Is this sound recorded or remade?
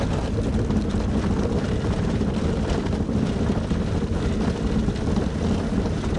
recorded